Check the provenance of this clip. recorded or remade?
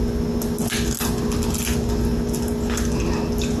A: recorded